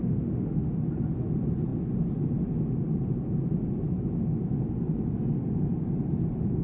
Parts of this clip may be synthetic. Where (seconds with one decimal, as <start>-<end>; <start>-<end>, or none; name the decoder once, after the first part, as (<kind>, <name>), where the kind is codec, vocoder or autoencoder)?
0.0-0.7 (autoencoder, DAC-VAE)

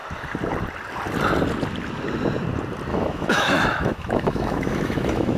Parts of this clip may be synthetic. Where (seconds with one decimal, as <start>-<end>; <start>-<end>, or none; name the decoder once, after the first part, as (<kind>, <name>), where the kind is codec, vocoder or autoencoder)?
2.9-5.4 (autoencoder, DAC-VAE)

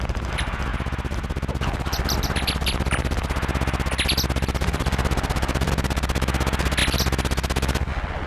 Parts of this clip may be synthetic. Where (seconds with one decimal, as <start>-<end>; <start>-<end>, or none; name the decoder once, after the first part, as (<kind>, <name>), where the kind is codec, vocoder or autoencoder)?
none

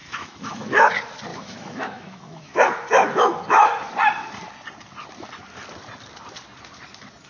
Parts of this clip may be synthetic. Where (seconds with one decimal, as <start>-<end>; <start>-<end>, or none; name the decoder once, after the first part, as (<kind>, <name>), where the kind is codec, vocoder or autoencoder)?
0.0-0.9 (autoencoder, DAC-VAE); 1.3-3.9

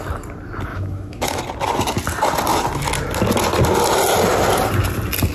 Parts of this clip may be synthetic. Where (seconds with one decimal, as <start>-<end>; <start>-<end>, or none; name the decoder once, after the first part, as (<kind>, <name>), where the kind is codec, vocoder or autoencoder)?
0.7-1.4 (autoencoder, DAC-VAE)

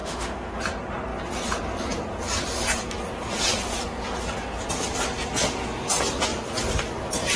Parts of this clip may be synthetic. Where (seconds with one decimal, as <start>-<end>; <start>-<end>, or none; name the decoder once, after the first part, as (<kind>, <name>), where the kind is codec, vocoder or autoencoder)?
0.0-0.6 (autoencoder, DAC-VAE)

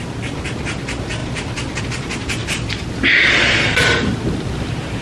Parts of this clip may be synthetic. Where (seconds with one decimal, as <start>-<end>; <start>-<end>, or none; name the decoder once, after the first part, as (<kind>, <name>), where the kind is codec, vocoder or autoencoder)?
none

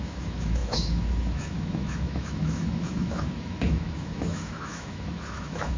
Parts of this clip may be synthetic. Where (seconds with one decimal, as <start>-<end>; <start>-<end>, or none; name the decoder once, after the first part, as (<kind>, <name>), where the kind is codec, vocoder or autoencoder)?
0.0-5.8 (autoencoder, DAC-VAE)